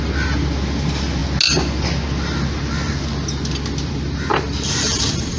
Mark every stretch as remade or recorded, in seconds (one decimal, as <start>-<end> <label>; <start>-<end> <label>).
0.0-4.3 recorded; 4.3-5.4 remade